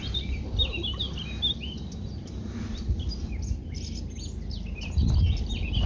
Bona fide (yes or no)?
yes